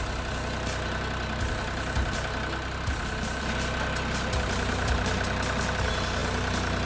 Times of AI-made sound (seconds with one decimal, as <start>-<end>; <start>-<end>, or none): none